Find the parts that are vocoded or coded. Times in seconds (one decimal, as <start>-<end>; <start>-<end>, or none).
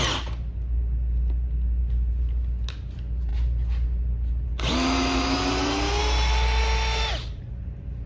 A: none